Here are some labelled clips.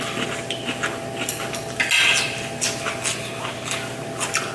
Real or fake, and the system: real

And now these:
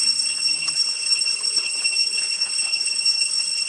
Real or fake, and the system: fake, codec, HILCodec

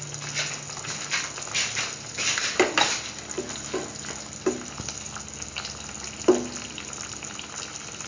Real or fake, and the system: real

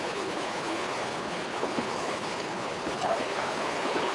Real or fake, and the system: fake, codec, HILCodec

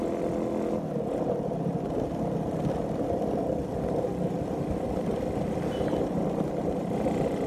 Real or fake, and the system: real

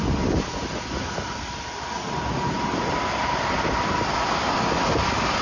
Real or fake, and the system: real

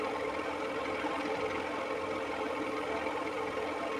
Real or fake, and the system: real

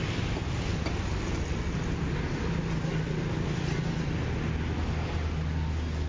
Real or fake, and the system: real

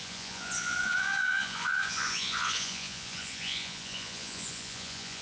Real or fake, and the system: fake, vocoder, Vocos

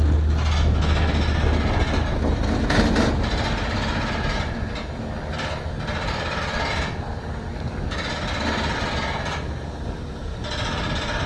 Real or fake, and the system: real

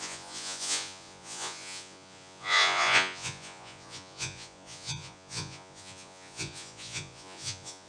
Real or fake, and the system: fake, vocoder, Vocos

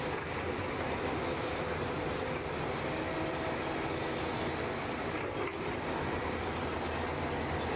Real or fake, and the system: real